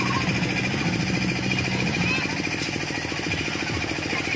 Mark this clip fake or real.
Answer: real